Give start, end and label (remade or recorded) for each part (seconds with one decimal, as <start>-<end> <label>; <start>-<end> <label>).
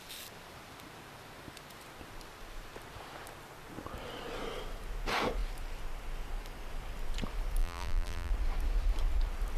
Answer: 0.0-7.6 recorded; 7.6-8.3 remade; 8.3-9.6 recorded